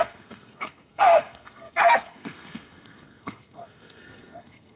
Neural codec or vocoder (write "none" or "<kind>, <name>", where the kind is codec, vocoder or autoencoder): codec, SNAC